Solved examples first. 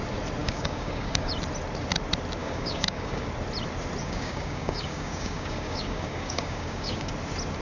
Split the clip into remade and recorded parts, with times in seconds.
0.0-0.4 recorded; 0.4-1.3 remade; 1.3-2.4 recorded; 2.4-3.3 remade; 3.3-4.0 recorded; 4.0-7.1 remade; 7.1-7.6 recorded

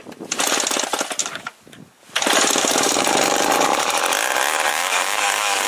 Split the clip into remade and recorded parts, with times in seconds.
0.0-1.2 recorded; 1.2-2.0 remade; 2.0-2.6 recorded; 2.6-4.0 remade; 4.0-4.7 recorded; 4.7-5.7 remade